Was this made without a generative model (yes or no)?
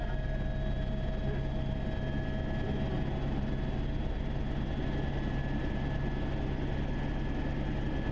yes